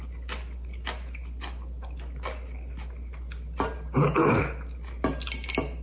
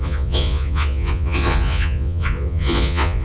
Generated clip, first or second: second